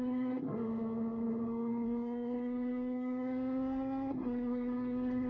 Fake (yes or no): yes